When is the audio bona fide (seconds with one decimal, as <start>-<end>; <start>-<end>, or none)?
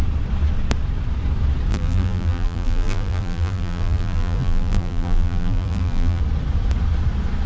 0.0-1.7; 6.2-7.5